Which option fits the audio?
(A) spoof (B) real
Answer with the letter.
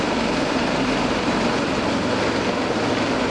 A